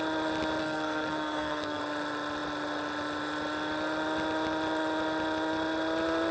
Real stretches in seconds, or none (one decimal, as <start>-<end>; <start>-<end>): 0.0-0.6; 1.8-6.3

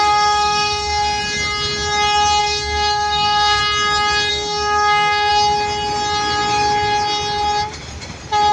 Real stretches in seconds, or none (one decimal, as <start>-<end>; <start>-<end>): 1.2-2.4; 3.6-4.3; 5.3-8.5

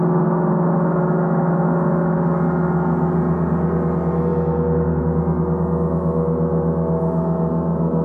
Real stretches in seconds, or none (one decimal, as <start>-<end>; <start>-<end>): 0.0-8.0

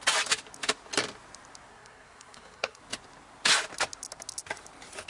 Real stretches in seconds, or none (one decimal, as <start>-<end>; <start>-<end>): 0.0-1.7; 2.8-5.1